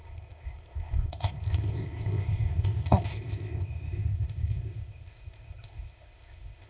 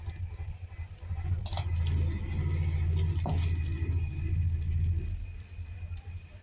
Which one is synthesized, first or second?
first